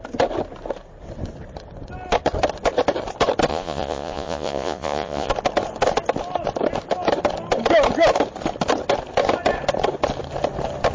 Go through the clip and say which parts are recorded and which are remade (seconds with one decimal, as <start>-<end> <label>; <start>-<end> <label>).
0.0-3.5 recorded; 3.5-5.3 remade; 5.3-10.9 recorded

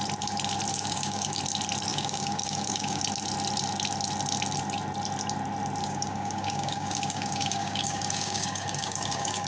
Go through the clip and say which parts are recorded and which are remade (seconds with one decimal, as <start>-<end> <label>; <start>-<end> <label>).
0.0-0.7 recorded; 0.7-1.4 remade; 1.4-1.9 recorded; 1.9-3.0 remade; 3.0-5.8 recorded; 5.8-9.5 remade

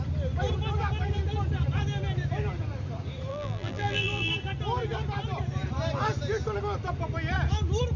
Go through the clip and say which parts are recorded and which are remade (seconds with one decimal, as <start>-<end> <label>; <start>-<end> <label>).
0.0-3.3 recorded; 3.3-4.3 remade; 4.3-8.0 recorded

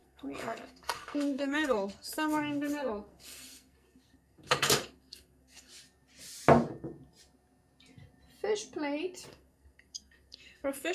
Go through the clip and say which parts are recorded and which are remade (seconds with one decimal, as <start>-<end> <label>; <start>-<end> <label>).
0.0-5.7 remade; 5.7-9.3 recorded; 9.3-10.9 remade

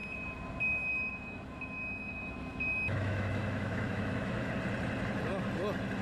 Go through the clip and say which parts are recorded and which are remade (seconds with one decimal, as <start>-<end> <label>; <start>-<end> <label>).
0.0-0.9 recorded; 0.9-4.5 remade; 4.5-6.0 recorded

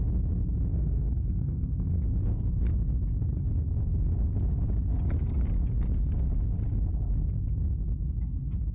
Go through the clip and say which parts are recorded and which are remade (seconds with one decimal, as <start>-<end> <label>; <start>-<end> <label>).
0.0-0.7 recorded; 0.7-2.0 remade; 2.0-8.7 recorded

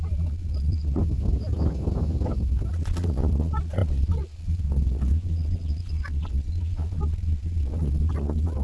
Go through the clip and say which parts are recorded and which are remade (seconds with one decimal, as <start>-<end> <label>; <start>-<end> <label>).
0.0-1.0 remade; 1.0-2.7 recorded; 2.7-8.6 remade